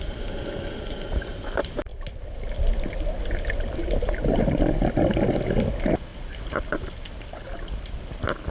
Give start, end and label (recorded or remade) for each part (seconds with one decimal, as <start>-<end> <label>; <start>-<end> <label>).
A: 0.0-8.5 recorded